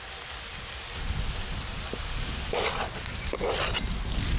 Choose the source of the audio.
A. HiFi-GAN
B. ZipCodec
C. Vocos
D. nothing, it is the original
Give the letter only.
D